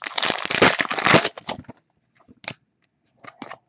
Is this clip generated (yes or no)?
no